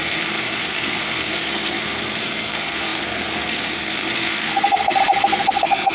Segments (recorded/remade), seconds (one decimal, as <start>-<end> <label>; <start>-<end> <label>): 0.0-5.9 remade

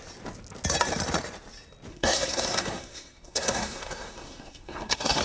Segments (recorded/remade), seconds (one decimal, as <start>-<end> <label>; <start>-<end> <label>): 0.0-1.9 recorded; 1.9-5.2 remade

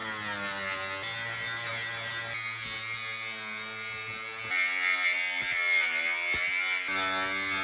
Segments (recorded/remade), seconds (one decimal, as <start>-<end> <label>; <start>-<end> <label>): 0.0-7.6 recorded